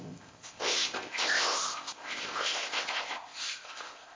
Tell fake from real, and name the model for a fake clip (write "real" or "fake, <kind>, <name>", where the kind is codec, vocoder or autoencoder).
fake, codec, ZipCodec